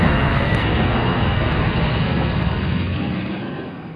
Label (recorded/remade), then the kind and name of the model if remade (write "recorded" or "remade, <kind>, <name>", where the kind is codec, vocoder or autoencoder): remade, codec, SNAC